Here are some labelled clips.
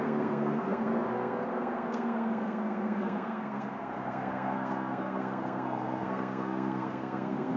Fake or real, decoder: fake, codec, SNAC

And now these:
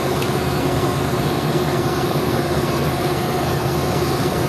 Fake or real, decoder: fake, codec, SNAC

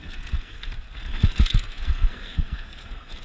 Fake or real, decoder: fake, codec, SNAC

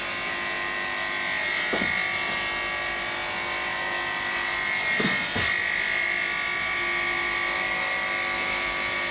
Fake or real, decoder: real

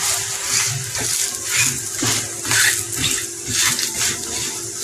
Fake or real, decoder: real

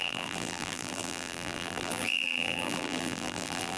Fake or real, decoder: fake, vocoder, BigVGAN v2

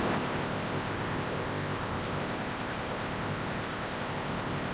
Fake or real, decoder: fake, codec, ZipCodec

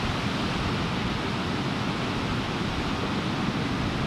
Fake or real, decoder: real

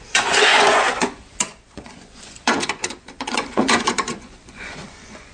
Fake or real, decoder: fake, vocoder, Vocos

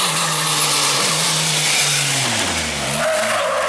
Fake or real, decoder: real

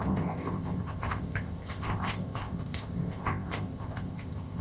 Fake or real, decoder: fake, codec, ZipCodec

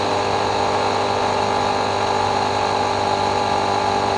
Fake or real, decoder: real